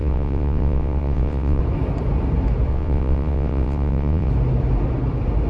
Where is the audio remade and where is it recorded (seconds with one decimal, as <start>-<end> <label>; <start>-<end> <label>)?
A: 0.0-1.6 remade; 1.6-2.7 recorded; 2.7-4.3 remade; 4.3-5.5 recorded